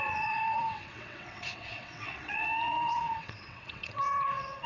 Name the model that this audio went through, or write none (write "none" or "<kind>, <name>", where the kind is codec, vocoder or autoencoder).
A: vocoder, WaveNeXt